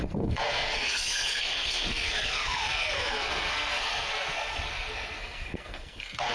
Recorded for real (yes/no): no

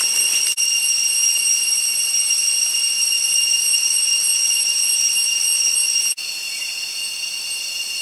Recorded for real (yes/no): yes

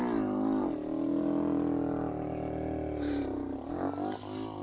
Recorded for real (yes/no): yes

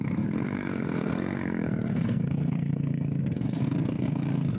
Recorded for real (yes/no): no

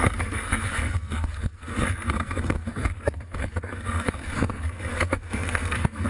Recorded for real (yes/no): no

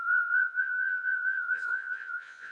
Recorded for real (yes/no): no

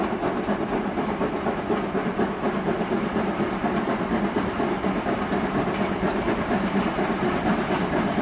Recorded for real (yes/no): yes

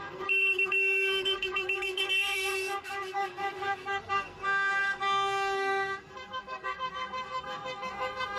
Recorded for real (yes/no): no